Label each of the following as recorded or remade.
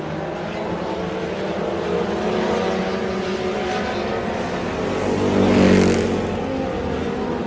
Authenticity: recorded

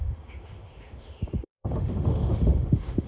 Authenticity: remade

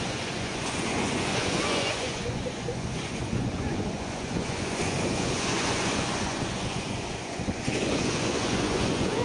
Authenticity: remade